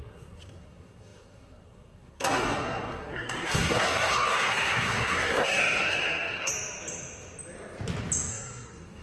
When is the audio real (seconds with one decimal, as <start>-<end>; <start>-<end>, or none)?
6.5-8.3